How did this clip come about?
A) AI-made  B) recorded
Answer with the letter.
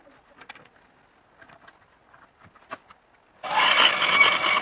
B